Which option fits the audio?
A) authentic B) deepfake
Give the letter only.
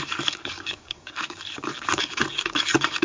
B